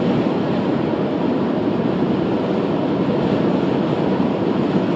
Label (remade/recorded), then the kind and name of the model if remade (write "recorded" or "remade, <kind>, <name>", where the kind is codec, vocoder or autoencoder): recorded